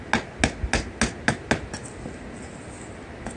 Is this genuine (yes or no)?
yes